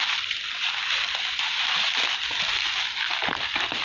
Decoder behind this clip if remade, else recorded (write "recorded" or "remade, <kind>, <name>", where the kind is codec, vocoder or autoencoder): recorded